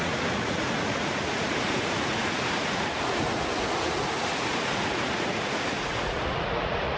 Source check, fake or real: fake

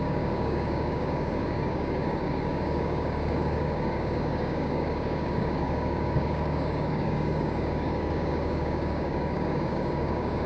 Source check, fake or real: fake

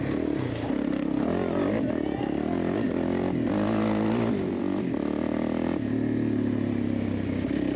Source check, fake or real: real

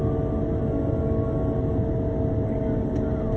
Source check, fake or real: real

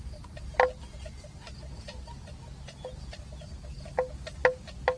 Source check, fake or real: real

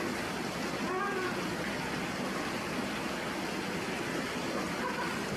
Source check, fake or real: real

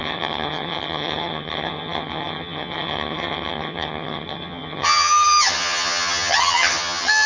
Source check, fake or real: fake